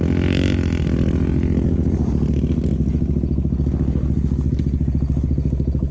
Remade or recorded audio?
recorded